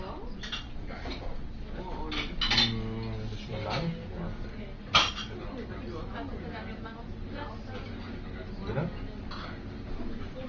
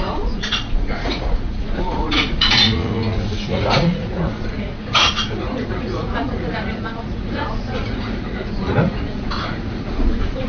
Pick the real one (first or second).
first